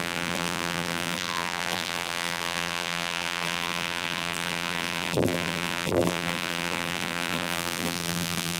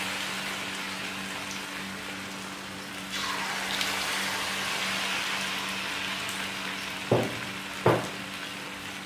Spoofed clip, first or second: first